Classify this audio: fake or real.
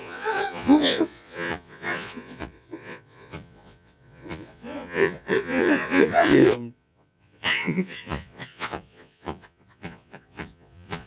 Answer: fake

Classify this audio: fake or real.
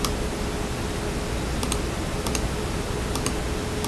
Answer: real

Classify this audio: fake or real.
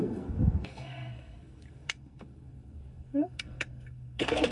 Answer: fake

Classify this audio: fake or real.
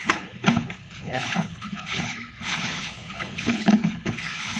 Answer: fake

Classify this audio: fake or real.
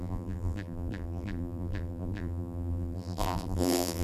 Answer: fake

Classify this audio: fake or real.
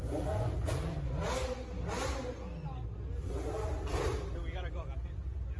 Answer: real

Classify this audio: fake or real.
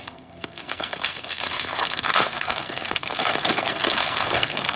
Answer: fake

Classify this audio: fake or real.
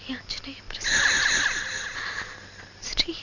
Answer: real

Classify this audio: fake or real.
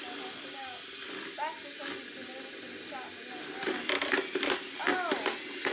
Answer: real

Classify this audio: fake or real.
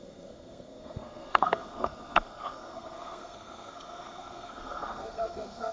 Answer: fake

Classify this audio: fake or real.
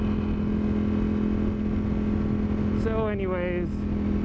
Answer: real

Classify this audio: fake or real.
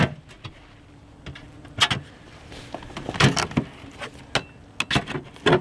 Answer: real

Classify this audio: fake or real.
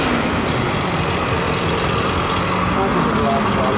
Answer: real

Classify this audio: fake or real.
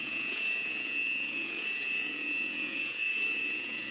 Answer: fake